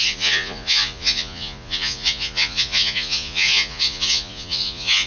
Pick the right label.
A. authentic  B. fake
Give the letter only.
B